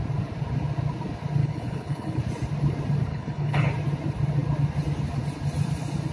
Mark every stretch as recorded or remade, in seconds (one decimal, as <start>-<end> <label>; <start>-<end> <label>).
0.0-1.4 recorded; 1.4-2.2 remade; 2.2-3.1 recorded; 3.1-3.7 remade; 3.7-6.1 recorded